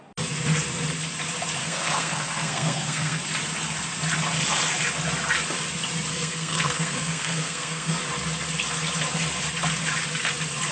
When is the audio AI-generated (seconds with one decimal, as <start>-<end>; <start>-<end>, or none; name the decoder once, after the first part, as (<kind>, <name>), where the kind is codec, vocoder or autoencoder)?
1.6-3.2 (codec, SNAC); 6.1-8.0